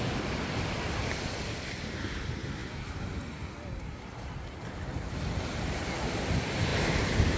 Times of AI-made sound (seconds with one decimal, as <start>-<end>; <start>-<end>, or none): none